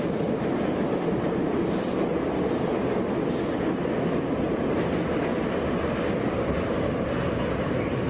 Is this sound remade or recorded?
recorded